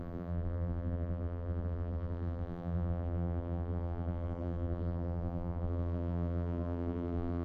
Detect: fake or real fake